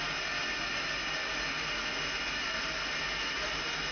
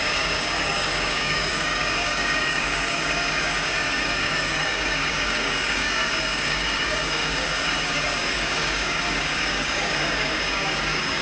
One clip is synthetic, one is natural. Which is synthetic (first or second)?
second